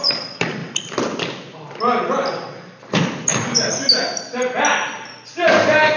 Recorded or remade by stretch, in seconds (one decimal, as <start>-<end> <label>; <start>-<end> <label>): 0.0-6.0 recorded